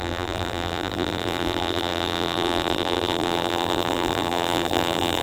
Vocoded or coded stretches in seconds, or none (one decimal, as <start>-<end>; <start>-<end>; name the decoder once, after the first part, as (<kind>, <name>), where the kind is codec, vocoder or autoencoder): 0.0-5.2 (vocoder, BigVGAN v2)